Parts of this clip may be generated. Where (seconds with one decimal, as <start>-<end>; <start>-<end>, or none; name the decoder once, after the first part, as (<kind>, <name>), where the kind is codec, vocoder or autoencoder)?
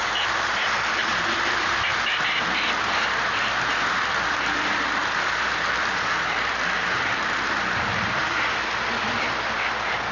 0.0-1.9 (vocoder, BigVGAN v2); 2.8-10.1